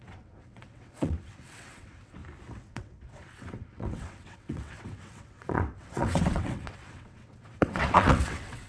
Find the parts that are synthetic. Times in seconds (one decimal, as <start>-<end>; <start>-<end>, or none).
0.0-2.2; 2.7-8.7